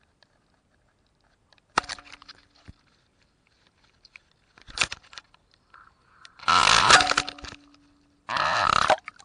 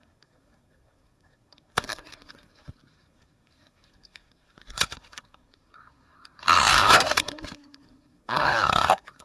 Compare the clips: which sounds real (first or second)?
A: first